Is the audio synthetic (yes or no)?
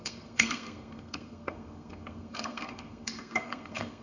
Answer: yes